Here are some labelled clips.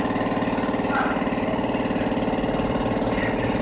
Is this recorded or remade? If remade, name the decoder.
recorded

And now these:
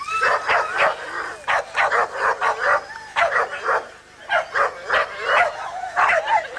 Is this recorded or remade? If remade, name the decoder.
recorded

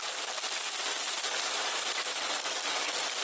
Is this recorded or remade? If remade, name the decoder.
recorded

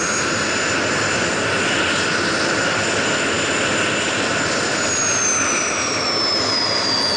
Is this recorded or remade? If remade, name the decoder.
recorded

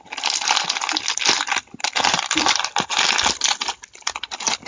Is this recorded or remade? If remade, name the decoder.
recorded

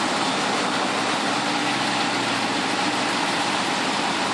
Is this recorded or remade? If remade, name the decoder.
recorded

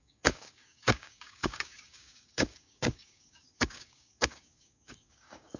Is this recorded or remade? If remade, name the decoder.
remade, codec, DAC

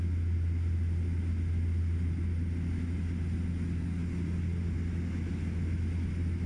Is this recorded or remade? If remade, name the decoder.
recorded